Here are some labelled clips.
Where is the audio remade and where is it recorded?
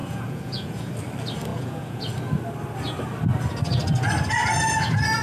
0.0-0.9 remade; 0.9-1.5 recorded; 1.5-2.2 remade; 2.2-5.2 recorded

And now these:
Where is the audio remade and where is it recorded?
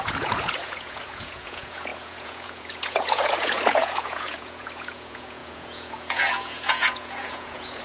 0.0-7.8 remade